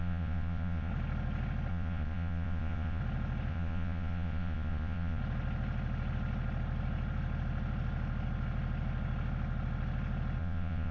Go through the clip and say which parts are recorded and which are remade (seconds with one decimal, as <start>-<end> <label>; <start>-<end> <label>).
0.0-0.9 remade; 0.9-1.7 recorded; 1.7-3.0 remade; 3.0-3.5 recorded; 3.5-5.2 remade; 5.2-10.4 recorded; 10.4-10.9 remade